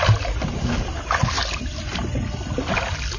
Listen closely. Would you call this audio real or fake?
real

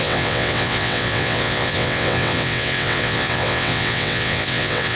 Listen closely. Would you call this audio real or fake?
fake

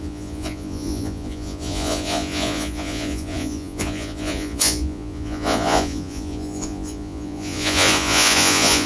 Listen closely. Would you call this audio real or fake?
fake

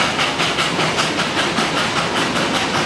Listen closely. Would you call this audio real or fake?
real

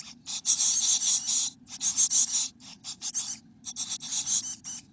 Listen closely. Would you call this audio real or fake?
real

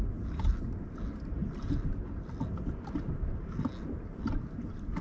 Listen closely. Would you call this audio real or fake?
real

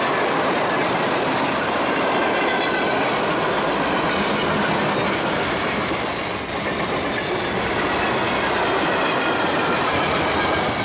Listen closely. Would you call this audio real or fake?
real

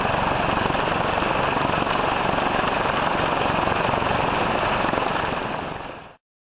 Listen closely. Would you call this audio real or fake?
real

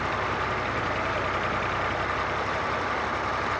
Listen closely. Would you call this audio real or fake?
real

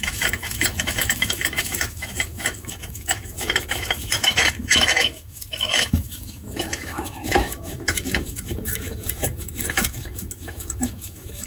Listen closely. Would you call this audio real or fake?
fake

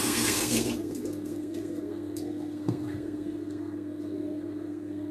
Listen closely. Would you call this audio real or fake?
fake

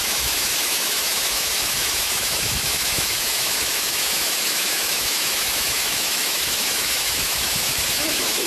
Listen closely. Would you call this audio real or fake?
fake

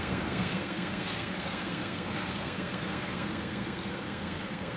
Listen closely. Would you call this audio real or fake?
fake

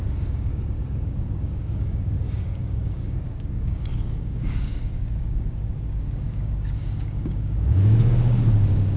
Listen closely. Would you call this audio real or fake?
fake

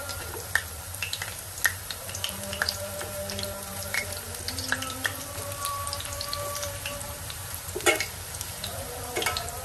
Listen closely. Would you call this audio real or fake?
fake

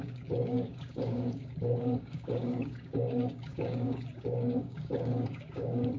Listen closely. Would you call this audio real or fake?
fake